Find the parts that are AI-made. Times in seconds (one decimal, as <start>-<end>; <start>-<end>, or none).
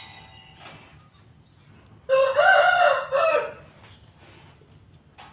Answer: none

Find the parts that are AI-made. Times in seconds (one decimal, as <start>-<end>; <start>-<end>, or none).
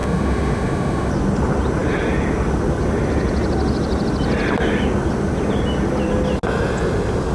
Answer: 0.0-1.1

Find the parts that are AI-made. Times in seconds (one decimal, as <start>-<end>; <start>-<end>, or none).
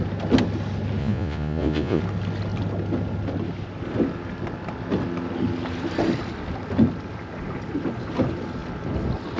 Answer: 1.0-2.0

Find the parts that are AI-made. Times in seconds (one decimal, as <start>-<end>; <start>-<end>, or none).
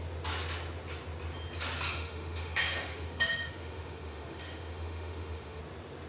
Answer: 1.9-5.6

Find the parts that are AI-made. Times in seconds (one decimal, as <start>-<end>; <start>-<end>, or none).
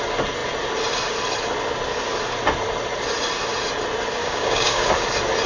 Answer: 4.2-4.9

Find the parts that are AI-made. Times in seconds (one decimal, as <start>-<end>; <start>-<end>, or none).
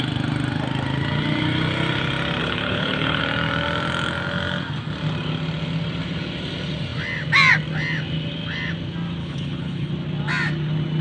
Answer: 2.4-3.2; 9.2-9.9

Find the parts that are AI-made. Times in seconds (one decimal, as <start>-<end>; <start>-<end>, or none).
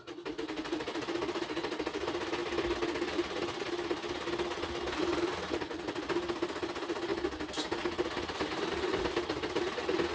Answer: none